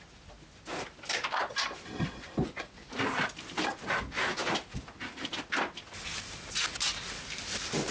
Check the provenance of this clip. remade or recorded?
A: recorded